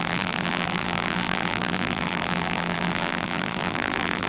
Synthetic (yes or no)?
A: yes